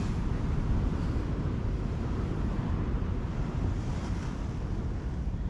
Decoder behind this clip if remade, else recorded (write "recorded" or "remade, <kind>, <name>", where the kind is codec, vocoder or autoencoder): recorded